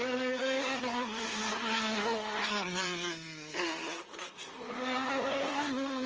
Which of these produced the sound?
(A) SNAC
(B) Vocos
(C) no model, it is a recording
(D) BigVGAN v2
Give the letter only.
A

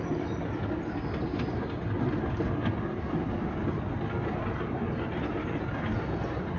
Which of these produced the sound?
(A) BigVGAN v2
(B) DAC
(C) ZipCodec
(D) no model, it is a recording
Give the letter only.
D